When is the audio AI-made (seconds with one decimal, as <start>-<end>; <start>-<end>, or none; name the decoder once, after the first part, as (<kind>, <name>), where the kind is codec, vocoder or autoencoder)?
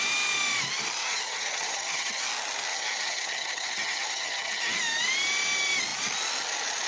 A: 1.0-2.2 (vocoder, HiFi-GAN); 2.7-4.8